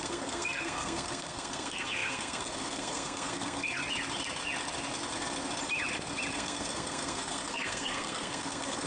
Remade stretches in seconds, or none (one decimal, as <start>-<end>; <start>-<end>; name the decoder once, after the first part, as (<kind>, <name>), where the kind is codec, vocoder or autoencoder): 0.0-3.8 (codec, SNAC); 6.3-8.9